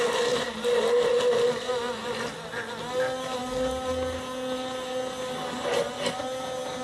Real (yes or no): yes